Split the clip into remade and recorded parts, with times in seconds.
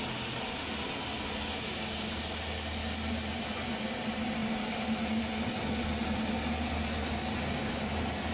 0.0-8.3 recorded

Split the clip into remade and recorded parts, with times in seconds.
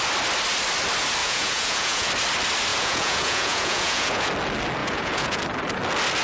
0.0-1.2 recorded; 1.2-2.1 remade; 2.1-2.7 recorded; 2.7-4.3 remade; 4.3-4.8 recorded; 4.8-5.4 remade; 5.4-6.2 recorded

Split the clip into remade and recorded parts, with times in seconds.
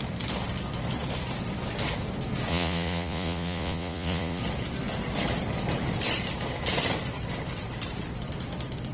0.0-2.5 recorded; 2.5-4.4 remade; 4.4-8.9 recorded